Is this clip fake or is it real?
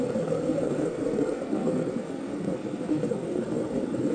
fake